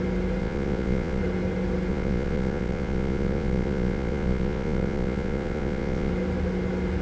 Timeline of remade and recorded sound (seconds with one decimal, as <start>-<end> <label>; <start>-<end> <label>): 0.0-0.4 recorded; 0.4-1.2 remade; 1.2-1.9 recorded; 1.9-6.1 remade; 6.1-7.0 recorded